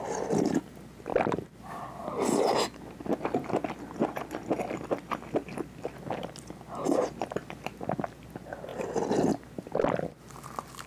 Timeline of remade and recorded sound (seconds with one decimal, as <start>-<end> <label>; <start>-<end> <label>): 0.0-10.9 recorded